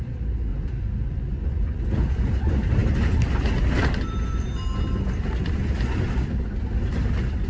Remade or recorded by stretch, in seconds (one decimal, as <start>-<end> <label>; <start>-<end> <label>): 0.0-0.5 recorded; 0.5-1.8 remade; 1.8-7.5 recorded